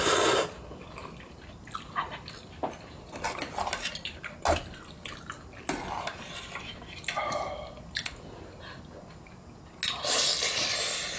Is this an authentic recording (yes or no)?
yes